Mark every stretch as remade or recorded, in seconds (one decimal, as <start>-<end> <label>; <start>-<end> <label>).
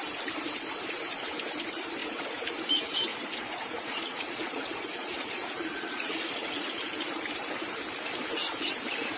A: 0.0-3.1 recorded; 3.1-7.0 remade; 7.0-9.2 recorded